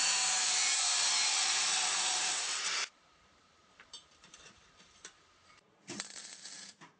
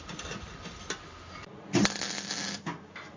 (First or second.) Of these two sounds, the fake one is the first